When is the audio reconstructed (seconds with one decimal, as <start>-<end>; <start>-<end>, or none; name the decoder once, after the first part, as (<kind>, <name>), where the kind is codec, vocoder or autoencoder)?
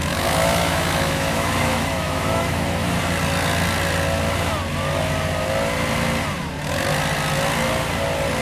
0.0-3.0 (autoencoder, DAC-VAE)